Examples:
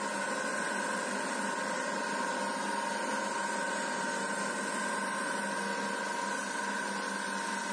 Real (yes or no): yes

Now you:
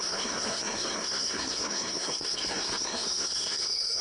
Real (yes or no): no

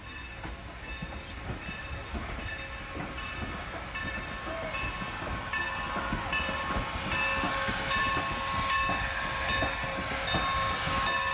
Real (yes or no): yes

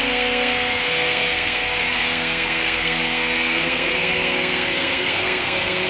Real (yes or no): no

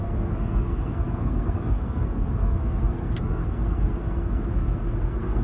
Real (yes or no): no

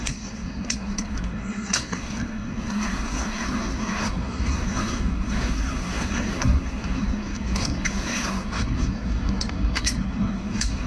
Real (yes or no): no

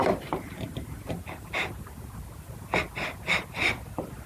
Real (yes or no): yes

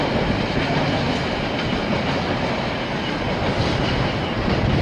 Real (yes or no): yes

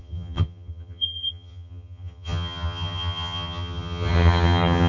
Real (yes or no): no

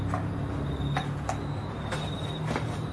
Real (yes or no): yes